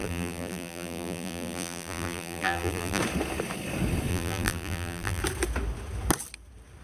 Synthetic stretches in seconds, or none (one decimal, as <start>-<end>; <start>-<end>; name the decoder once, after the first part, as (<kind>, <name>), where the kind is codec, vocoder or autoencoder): 0.0-3.0 (vocoder, BigVGAN v2); 4.1-5.2